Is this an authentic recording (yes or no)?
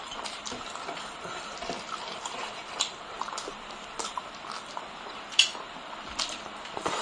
no